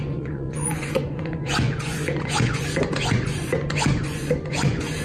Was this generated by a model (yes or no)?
yes